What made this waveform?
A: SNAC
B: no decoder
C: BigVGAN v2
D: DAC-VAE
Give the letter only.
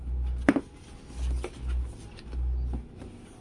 B